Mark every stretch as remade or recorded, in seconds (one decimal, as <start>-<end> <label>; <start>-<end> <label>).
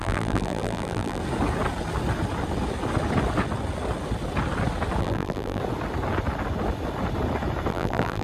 0.0-1.2 remade; 1.2-5.0 recorded; 5.0-5.6 remade; 5.6-7.7 recorded; 7.7-8.2 remade